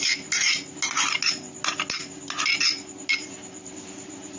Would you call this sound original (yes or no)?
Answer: yes